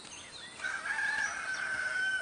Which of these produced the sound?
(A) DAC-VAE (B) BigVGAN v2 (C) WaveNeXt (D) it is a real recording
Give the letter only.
D